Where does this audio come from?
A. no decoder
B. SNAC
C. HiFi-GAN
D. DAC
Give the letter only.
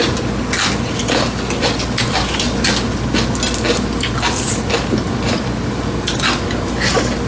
A